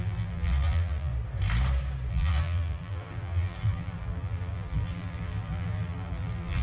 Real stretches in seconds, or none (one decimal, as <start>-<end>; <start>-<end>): 1.1-2.1